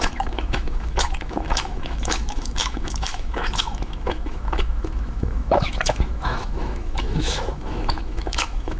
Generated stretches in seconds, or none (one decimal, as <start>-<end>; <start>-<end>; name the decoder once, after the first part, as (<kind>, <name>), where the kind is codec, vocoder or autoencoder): 0.0-8.8 (autoencoder, DAC-VAE)

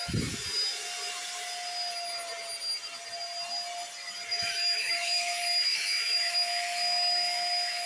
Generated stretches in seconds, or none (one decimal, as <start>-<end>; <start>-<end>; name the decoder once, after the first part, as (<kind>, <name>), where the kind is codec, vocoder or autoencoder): 4.3-7.9 (autoencoder, DAC-VAE)